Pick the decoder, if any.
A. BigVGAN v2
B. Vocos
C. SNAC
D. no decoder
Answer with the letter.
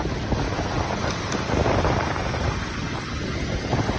D